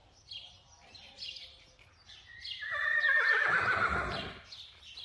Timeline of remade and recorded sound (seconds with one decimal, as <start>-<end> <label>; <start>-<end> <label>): 0.0-5.0 recorded